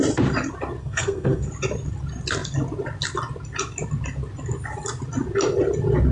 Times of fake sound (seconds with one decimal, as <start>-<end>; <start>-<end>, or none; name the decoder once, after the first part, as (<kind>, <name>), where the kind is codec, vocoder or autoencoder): 0.8-1.5 (codec, SNAC)